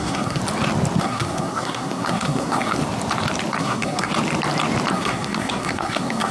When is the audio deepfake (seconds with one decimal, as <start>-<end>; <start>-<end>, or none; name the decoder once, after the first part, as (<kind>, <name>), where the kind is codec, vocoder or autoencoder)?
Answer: 0.0-0.4 (codec, SNAC); 1.0-2.8; 3.6-4.1; 4.9-6.3